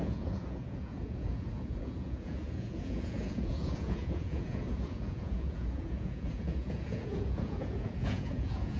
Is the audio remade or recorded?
remade